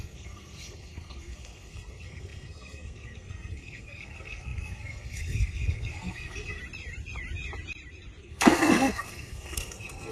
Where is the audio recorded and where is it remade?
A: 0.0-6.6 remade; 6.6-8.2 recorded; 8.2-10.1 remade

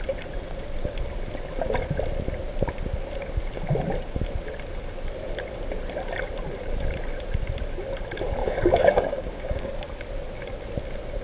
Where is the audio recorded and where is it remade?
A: 0.0-8.4 recorded; 8.4-9.7 remade; 9.7-11.2 recorded

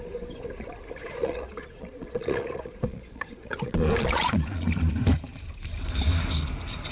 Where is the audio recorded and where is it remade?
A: 0.0-1.0 recorded; 1.0-4.9 remade; 4.9-6.9 recorded

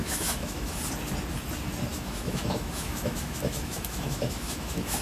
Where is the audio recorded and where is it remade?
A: 0.0-0.8 remade; 0.8-1.9 recorded; 1.9-5.0 remade

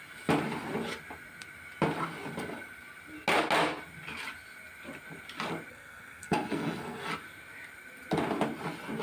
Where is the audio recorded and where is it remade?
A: 0.0-5.7 recorded; 5.7-7.1 remade; 7.1-9.0 recorded